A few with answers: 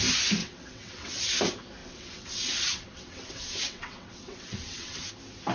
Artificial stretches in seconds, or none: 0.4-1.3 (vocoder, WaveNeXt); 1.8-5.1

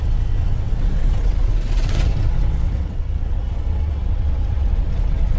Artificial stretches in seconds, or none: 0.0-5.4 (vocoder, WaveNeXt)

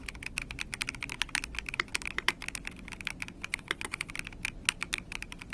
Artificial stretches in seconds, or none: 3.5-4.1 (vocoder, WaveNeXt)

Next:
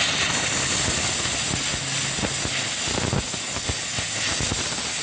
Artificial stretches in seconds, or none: none